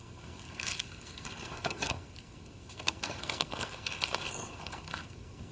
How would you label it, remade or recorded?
remade